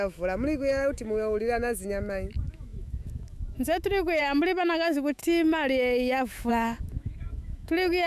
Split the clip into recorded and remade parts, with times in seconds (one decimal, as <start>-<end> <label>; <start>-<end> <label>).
0.0-8.1 remade